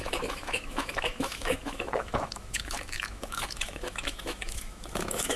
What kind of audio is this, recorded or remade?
remade